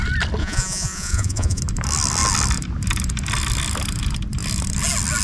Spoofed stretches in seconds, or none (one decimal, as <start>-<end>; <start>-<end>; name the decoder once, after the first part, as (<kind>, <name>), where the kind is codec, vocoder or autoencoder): 0.4-1.6 (vocoder, Vocos)